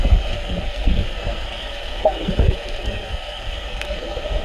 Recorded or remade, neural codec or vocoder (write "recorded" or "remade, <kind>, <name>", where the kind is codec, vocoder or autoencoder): remade, codec, SNAC